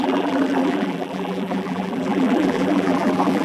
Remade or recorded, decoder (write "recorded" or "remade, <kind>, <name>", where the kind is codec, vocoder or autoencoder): remade, vocoder, BigVGAN v2